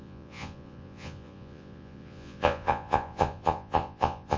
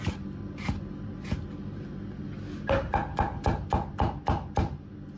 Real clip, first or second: second